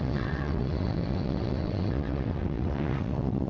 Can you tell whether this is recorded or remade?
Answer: remade